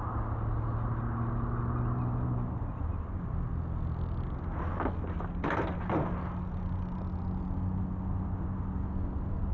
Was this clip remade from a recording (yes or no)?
no